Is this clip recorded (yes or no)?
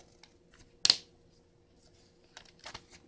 yes